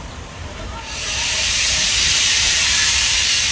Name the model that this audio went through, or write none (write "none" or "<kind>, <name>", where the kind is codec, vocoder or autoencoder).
vocoder, BigVGAN v2